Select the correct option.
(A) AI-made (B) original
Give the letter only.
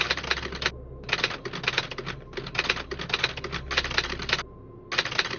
B